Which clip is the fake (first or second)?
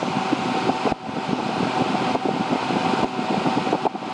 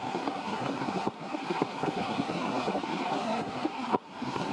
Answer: second